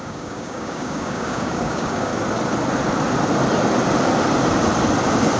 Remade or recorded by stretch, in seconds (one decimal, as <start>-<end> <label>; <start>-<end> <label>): 0.0-2.1 remade; 2.1-5.4 recorded